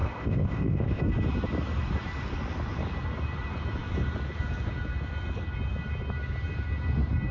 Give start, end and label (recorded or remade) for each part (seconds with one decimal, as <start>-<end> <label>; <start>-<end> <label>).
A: 0.0-1.0 remade; 1.0-7.3 recorded